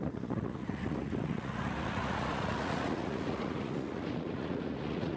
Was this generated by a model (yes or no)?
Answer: yes